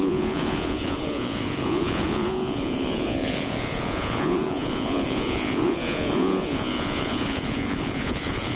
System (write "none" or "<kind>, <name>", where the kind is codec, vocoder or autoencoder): vocoder, Vocos